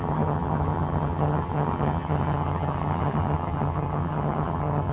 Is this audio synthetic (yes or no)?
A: yes